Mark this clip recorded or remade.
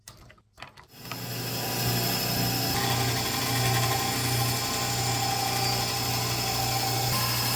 recorded